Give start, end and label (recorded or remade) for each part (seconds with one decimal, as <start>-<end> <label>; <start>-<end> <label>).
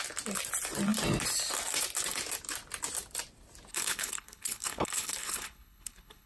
0.0-3.7 recorded; 3.7-6.3 remade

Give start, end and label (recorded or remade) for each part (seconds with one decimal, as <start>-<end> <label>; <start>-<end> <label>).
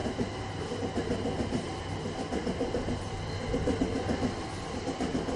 0.0-5.4 recorded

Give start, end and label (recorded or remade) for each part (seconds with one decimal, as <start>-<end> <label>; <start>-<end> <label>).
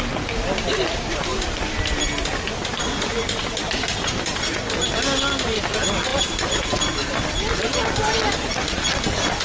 0.0-9.4 recorded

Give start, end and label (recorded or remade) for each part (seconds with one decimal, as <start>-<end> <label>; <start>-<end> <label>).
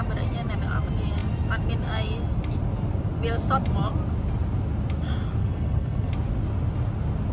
0.0-5.4 recorded; 5.4-6.1 remade; 6.1-7.3 recorded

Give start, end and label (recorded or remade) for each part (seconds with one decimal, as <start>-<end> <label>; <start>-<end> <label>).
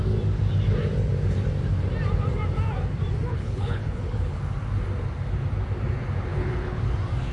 0.0-3.3 recorded; 3.3-4.4 remade; 4.4-6.3 recorded; 6.3-6.8 remade; 6.8-7.3 recorded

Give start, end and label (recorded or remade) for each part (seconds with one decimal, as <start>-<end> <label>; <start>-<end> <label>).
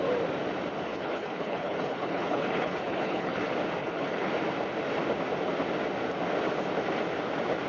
0.0-0.9 recorded; 0.9-3.4 remade; 3.4-3.8 recorded; 3.8-4.3 remade; 4.3-7.7 recorded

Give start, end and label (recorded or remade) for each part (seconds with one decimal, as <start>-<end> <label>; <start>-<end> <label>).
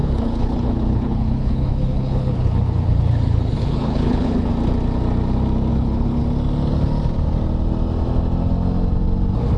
0.0-4.5 remade; 4.5-5.7 recorded; 5.7-6.2 remade; 6.2-9.6 recorded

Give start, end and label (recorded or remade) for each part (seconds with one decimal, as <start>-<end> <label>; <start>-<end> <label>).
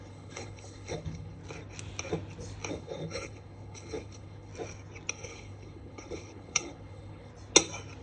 0.0-1.4 remade; 1.4-2.7 recorded; 2.7-4.5 remade; 4.5-5.1 recorded; 5.1-7.3 remade; 7.3-8.0 recorded